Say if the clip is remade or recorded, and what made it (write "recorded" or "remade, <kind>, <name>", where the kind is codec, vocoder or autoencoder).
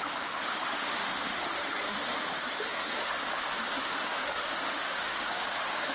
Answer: remade, autoencoder, DAC-VAE